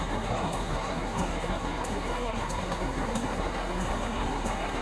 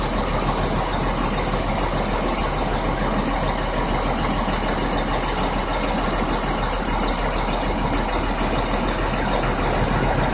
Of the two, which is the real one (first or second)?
second